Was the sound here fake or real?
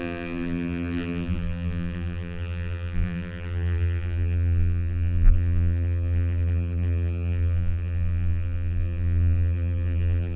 fake